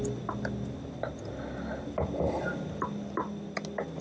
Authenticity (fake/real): real